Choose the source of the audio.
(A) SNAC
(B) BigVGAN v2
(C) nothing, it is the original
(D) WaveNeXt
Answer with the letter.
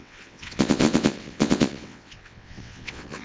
D